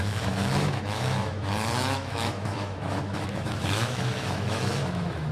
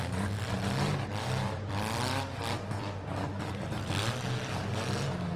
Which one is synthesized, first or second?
first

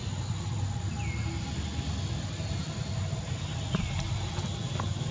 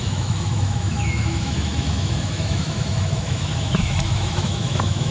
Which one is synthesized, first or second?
second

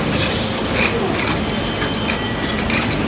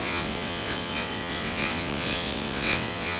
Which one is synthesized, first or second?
second